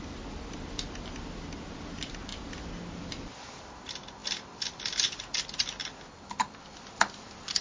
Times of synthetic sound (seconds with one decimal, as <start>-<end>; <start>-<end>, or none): none